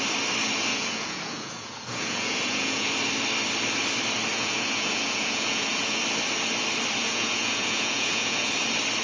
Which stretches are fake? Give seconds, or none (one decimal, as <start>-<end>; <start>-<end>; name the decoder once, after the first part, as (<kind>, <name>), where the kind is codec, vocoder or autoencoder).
0.7-2.9 (vocoder, Vocos); 4.3-6.0; 7.0-8.5